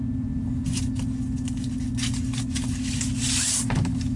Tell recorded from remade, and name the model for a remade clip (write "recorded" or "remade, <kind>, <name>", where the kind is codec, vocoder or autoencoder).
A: recorded